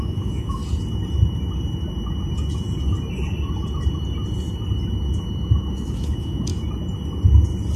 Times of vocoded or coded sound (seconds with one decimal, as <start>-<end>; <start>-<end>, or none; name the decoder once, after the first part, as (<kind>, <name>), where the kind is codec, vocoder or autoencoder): 0.0-0.6 (autoencoder, DAC-VAE); 5.3-6.5